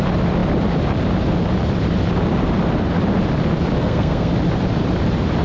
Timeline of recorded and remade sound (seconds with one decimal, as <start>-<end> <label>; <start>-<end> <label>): 0.0-3.8 recorded; 3.8-4.3 remade; 4.3-5.4 recorded